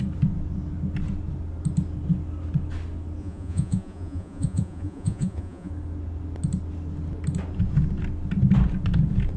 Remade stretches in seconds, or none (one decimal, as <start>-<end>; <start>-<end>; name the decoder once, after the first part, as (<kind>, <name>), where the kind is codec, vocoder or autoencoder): 3.2-5.7 (vocoder, Vocos)